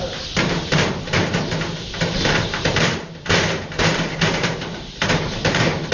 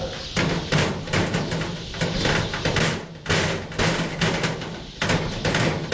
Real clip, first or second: second